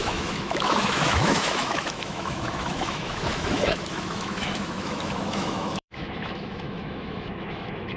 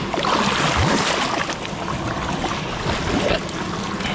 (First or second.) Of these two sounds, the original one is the second